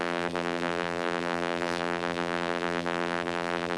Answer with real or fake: fake